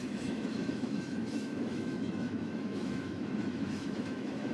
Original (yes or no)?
no